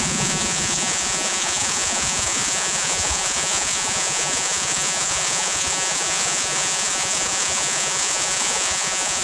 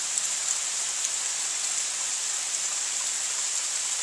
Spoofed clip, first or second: first